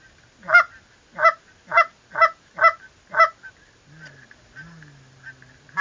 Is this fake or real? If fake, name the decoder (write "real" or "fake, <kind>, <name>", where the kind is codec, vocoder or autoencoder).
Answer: real